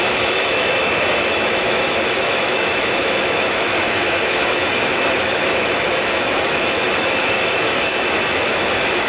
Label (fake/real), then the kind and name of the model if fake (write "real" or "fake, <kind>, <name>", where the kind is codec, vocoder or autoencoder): fake, autoencoder, DAC-VAE